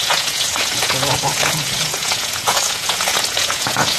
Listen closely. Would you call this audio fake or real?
fake